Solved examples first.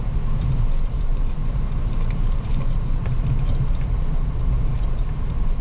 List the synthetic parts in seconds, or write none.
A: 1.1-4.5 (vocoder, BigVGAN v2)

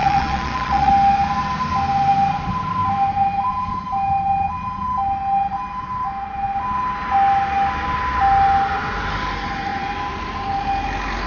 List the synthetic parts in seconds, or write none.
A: 0.0-0.9 (vocoder, Vocos)

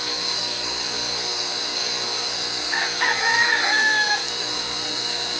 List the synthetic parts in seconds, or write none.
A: 0.0-5.4 (codec, SNAC)

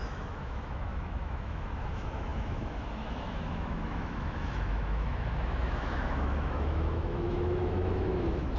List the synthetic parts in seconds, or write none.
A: 0.0-8.6 (autoencoder, DAC-VAE)

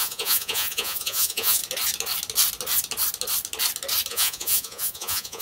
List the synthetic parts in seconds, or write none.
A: 0.0-1.6 (vocoder, Vocos); 4.1-5.4

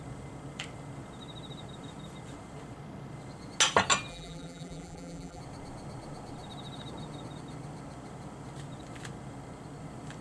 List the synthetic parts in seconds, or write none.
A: 4.1-5.4 (vocoder, BigVGAN v2)

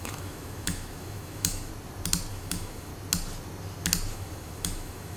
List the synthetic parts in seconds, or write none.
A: 0.0-1.7 (autoencoder, DAC-VAE); 2.3-2.9; 4.1-5.2